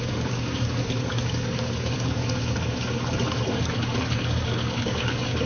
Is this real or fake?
fake